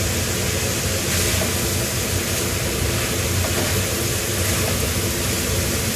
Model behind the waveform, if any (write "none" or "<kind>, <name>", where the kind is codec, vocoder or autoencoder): none